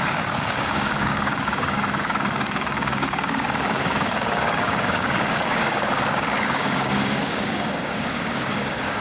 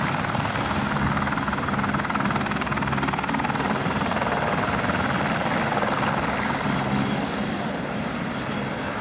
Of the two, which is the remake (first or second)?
first